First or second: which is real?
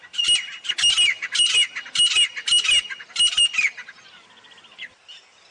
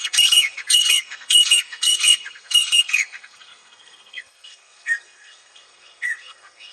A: first